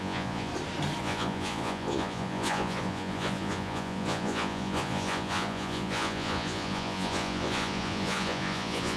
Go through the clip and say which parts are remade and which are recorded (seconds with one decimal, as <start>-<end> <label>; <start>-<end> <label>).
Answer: 0.0-0.5 remade; 0.5-1.0 recorded; 1.0-9.0 remade